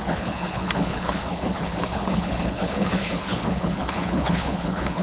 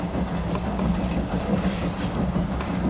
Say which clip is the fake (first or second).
first